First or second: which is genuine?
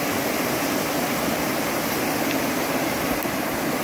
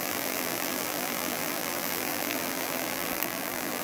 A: first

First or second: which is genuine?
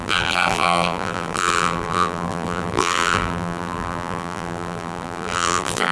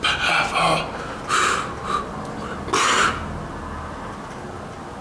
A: second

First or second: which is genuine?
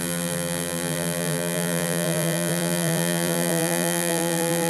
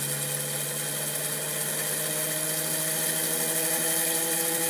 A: second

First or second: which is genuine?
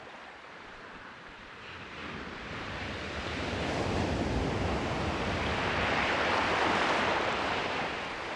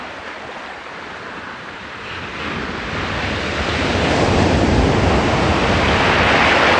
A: second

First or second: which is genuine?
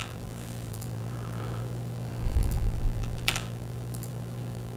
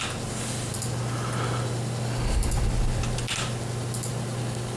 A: second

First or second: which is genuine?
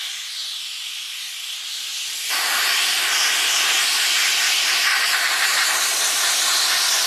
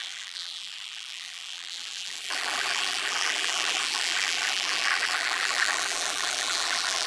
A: first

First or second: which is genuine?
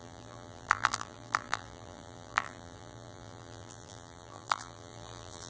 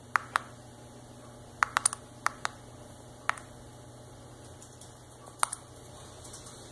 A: second